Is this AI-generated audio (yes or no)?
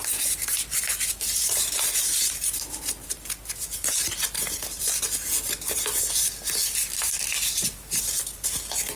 no